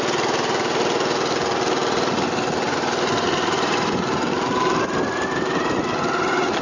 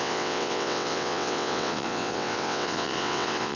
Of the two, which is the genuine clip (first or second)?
first